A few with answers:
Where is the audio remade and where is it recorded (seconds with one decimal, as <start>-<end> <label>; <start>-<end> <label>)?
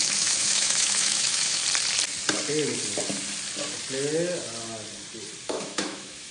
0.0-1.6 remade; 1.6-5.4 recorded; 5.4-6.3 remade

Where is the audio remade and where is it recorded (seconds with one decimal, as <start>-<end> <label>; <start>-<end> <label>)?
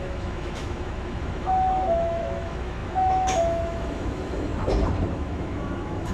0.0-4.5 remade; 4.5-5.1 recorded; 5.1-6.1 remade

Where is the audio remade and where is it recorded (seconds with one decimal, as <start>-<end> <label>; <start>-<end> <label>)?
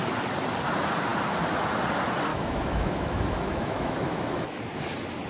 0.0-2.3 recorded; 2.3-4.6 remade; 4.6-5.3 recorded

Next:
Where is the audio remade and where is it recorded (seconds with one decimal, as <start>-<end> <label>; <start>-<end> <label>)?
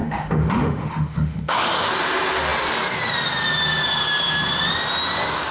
0.0-1.9 remade; 1.9-5.5 recorded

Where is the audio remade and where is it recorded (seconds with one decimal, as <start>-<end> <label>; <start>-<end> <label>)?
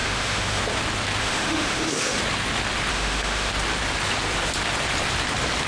0.0-0.6 remade; 0.6-1.2 recorded; 1.2-2.2 remade; 2.2-2.9 recorded; 2.9-3.5 remade; 3.5-5.7 recorded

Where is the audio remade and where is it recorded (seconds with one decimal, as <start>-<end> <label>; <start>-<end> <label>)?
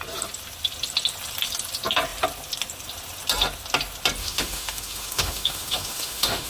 0.0-4.2 recorded; 4.2-6.5 remade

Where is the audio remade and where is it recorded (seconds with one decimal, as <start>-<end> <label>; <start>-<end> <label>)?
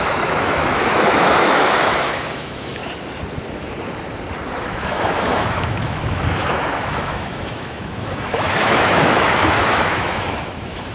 0.0-2.8 remade; 2.8-4.5 recorded; 4.5-10.9 remade